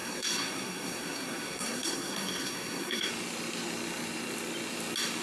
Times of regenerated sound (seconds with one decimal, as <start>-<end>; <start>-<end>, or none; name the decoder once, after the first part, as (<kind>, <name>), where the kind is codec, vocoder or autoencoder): 0.0-3.1 (codec, SNAC)